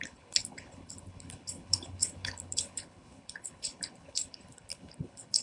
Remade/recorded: remade